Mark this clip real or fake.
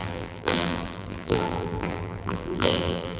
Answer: fake